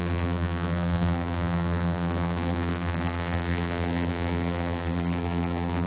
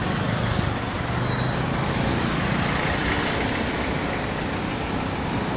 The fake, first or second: first